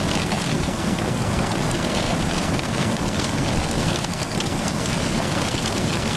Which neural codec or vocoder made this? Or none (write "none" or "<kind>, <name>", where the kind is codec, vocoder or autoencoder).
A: codec, SNAC